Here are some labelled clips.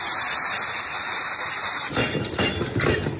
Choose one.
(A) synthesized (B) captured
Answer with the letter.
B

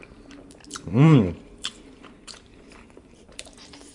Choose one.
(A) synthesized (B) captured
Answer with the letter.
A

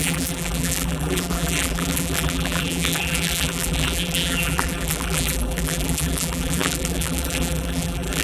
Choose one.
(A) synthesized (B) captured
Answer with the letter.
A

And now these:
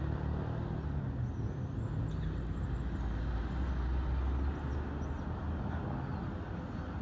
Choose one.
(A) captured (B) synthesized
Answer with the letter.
A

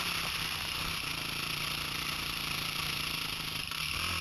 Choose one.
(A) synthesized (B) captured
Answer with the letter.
B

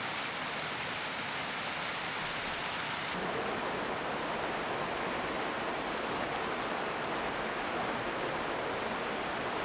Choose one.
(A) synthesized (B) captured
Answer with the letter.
B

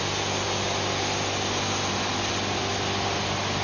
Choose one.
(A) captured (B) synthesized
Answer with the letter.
A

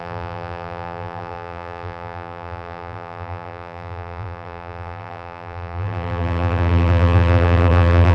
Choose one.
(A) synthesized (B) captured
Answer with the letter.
A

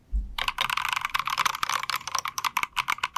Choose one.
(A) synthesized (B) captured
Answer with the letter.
B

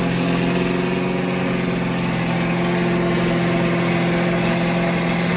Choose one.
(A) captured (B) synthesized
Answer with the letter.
A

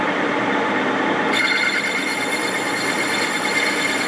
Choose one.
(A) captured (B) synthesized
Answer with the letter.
B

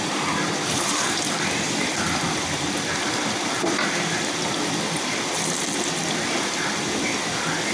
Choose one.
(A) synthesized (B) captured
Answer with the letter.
A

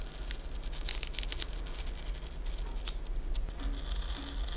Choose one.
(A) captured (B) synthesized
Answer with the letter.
A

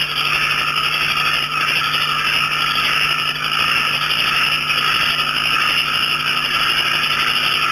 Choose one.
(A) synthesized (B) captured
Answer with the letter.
B